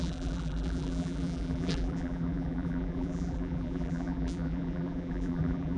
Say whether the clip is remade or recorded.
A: remade